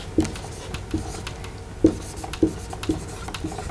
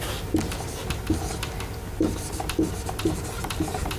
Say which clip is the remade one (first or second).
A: second